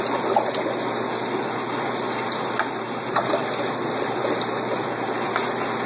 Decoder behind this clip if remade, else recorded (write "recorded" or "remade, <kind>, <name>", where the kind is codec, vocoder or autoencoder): recorded